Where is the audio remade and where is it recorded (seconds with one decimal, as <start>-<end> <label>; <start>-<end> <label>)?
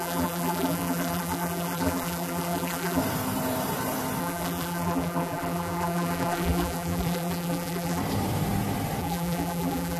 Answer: 0.0-3.0 remade; 3.0-4.2 recorded; 4.2-8.0 remade; 8.0-9.0 recorded; 9.0-10.0 remade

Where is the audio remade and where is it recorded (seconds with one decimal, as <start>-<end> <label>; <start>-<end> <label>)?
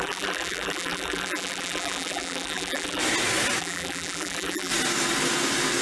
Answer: 0.0-3.0 remade; 3.0-3.6 recorded; 3.6-4.7 remade; 4.7-5.8 recorded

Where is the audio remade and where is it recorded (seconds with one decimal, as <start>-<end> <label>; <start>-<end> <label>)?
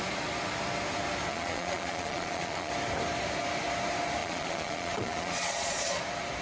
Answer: 0.0-1.3 recorded; 1.3-2.7 remade; 2.7-4.2 recorded; 4.2-6.0 remade; 6.0-6.4 recorded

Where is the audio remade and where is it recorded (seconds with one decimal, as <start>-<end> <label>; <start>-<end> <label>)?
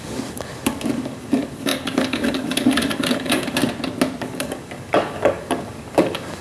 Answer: 0.0-3.6 remade; 3.6-4.2 recorded; 4.2-6.4 remade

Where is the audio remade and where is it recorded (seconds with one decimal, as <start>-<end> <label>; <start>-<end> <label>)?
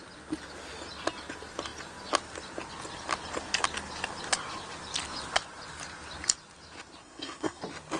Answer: 0.0-7.0 recorded; 7.0-7.6 remade; 7.6-8.0 recorded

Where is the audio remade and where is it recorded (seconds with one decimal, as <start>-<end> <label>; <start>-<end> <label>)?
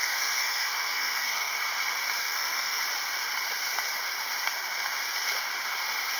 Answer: 0.0-1.6 remade; 1.6-2.2 recorded; 2.2-2.8 remade; 2.8-6.2 recorded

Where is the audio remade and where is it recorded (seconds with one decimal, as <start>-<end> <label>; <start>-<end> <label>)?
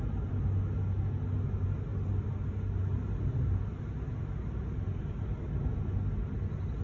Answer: 0.0-6.8 recorded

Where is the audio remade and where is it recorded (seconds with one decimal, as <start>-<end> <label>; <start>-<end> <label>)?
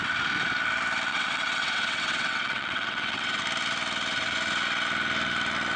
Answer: 0.0-1.1 recorded; 1.1-3.4 remade; 3.4-5.8 recorded